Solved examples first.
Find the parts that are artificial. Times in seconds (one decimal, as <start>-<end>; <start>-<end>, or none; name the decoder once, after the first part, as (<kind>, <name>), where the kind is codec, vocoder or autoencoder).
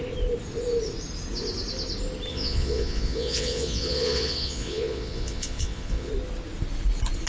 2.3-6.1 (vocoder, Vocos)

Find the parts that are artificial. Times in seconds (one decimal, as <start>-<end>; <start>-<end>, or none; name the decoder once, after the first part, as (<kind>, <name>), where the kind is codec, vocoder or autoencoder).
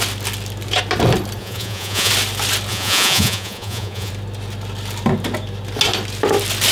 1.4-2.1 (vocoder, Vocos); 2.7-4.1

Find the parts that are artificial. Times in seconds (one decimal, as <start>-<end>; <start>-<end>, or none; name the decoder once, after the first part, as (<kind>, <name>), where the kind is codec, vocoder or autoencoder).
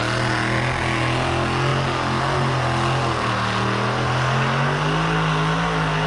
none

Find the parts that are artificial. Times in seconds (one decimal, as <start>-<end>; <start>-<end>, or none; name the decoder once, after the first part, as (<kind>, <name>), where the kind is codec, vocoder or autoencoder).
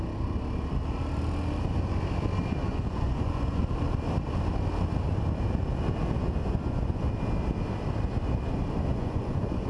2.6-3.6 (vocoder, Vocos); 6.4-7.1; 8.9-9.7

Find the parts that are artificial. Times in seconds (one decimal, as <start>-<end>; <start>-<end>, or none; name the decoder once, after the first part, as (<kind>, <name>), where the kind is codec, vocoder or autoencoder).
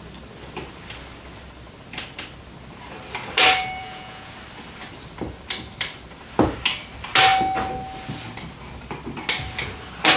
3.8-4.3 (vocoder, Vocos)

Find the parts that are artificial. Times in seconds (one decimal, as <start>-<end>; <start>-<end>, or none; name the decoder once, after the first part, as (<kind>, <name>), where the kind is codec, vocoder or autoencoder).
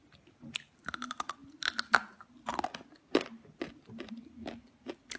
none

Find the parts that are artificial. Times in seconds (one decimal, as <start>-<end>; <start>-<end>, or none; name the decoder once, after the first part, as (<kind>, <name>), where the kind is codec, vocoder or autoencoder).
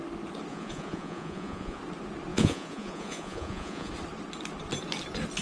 0.5-1.8 (vocoder, Vocos); 2.3-3.9